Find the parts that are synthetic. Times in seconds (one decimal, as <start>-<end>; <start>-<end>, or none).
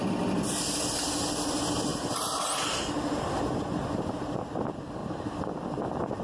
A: 1.9-4.4